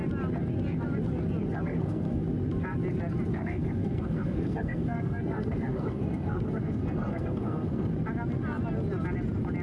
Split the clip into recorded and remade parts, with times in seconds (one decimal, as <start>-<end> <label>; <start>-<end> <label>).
0.0-1.7 recorded; 1.7-2.2 remade; 2.2-3.3 recorded; 3.3-7.9 remade; 7.9-9.6 recorded